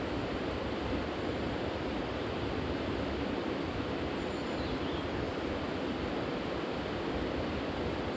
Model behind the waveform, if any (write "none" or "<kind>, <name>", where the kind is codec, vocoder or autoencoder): none